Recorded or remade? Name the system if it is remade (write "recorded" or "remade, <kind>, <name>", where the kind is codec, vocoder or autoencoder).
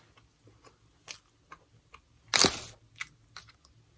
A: recorded